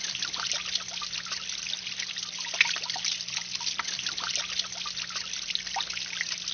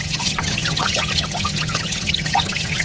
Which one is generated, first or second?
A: second